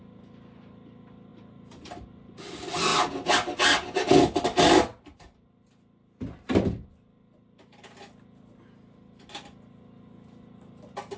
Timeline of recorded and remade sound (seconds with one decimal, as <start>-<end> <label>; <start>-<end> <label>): 0.0-11.2 recorded